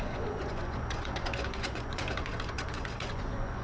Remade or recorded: remade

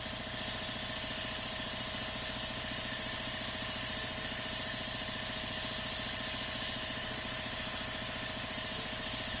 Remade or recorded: recorded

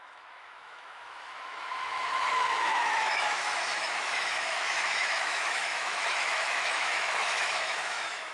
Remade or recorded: remade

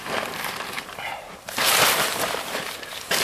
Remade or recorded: remade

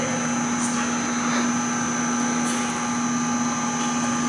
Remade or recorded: recorded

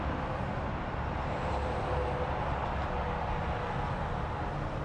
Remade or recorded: recorded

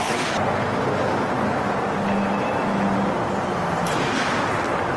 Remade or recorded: recorded